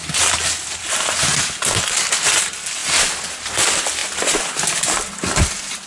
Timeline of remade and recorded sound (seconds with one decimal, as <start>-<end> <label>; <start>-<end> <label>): 0.0-5.9 recorded